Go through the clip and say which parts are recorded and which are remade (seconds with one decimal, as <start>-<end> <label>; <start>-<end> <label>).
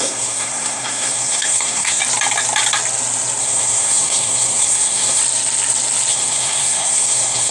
0.0-2.0 remade; 2.0-3.4 recorded; 3.4-5.2 remade; 5.2-6.1 recorded; 6.1-7.5 remade